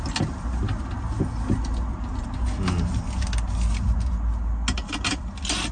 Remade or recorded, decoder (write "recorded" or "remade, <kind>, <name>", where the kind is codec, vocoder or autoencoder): recorded